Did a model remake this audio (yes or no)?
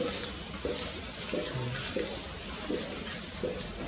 no